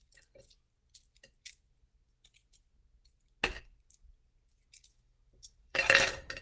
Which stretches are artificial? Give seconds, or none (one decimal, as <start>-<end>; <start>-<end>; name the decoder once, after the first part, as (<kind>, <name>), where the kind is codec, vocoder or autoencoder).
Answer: 4.9-5.8 (codec, DAC)